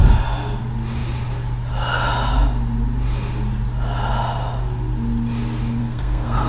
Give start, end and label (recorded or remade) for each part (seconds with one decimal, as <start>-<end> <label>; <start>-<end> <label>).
0.0-5.8 recorded; 5.8-6.5 remade

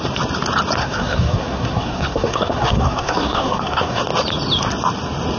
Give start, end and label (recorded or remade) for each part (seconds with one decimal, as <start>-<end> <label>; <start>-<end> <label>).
0.0-0.8 recorded; 0.8-4.0 remade; 4.0-5.4 recorded

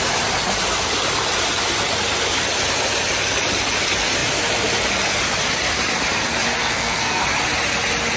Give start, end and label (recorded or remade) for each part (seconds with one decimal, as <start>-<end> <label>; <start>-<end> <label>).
0.0-6.6 recorded; 6.6-7.2 remade; 7.2-8.2 recorded

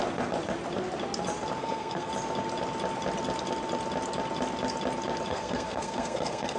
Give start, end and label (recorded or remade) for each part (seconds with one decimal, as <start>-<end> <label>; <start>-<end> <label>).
0.0-1.6 recorded; 1.6-2.1 remade; 2.1-5.3 recorded; 5.3-6.6 remade

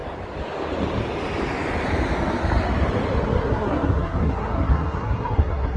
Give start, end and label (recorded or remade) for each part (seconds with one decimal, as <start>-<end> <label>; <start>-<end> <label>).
0.0-3.4 recorded; 3.4-5.8 remade